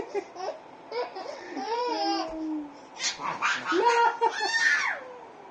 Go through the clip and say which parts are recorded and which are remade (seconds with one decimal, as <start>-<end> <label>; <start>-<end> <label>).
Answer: 0.0-1.1 recorded; 1.1-1.8 remade; 1.8-5.5 recorded